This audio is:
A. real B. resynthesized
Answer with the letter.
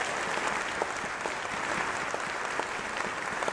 A